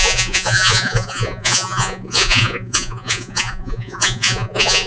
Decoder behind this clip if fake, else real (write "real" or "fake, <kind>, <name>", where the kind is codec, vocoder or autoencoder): fake, vocoder, Vocos